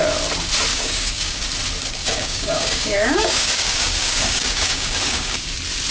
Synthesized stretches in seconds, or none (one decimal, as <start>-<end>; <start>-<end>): 0.7-1.5; 2.0-5.5